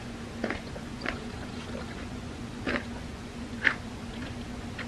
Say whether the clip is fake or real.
fake